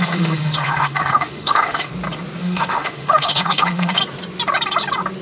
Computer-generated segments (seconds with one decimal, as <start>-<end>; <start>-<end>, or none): 0.0-1.9; 2.4-4.0